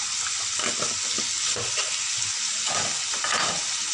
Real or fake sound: real